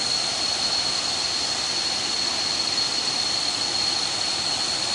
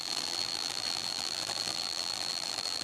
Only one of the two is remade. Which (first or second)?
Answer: second